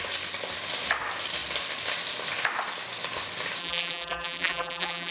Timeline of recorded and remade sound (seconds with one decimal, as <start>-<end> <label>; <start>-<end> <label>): 0.0-3.6 recorded; 3.6-5.1 remade